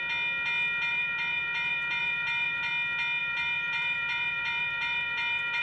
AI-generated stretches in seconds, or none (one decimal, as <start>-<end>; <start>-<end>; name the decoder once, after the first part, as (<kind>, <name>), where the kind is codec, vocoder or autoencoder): 0.9-2.7 (vocoder, BigVGAN v2); 3.2-5.6